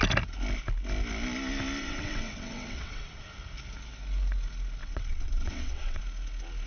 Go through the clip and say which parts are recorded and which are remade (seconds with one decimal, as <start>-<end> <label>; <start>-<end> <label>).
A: 0.0-1.8 recorded; 1.8-3.2 remade; 3.2-4.8 recorded; 4.8-6.0 remade; 6.0-6.7 recorded